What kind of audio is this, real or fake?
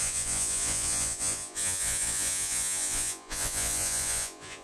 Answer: fake